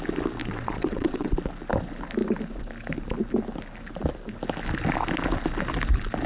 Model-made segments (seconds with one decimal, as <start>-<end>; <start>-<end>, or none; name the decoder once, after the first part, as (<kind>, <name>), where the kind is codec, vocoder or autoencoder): 0.4-1.3 (vocoder, WaveNeXt)